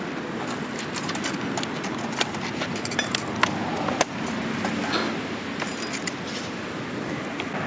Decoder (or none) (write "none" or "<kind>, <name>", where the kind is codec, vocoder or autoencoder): none